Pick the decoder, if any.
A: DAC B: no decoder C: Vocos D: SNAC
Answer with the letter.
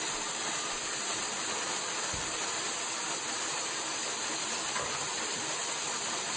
B